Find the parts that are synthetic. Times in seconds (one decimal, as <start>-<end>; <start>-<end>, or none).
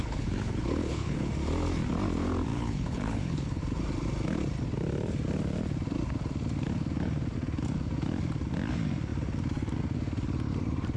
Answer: 0.0-1.3; 2.5-3.6